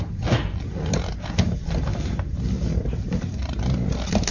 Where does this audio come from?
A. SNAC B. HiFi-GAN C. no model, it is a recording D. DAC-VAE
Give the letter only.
C